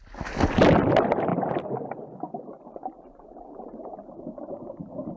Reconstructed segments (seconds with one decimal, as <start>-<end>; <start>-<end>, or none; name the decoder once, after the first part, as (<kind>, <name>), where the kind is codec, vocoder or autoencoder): none